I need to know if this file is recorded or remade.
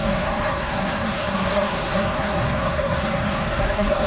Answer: remade